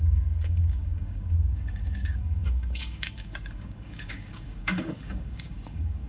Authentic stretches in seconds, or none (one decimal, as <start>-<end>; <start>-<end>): none